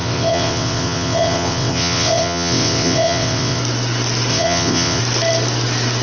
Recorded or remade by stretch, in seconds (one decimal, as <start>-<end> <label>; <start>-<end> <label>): 0.0-3.6 remade; 3.6-4.3 recorded; 4.3-5.0 remade; 5.0-6.0 recorded